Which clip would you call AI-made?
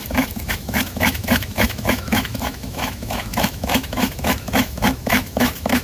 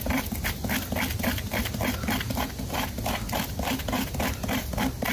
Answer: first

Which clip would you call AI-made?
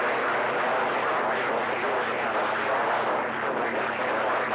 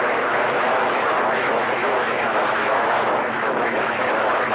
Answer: second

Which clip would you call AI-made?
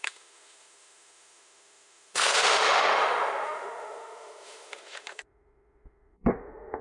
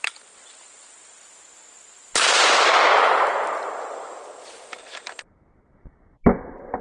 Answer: first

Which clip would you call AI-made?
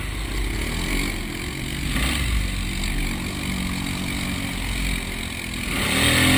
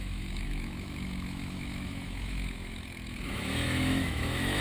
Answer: second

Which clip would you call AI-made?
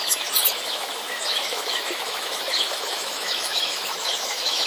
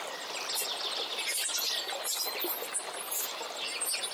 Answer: first